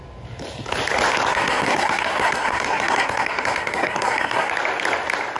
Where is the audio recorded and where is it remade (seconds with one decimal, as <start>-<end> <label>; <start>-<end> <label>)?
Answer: 0.0-1.3 recorded; 1.3-4.5 remade; 4.5-5.4 recorded